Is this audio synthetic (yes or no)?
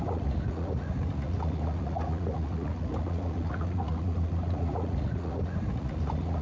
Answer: yes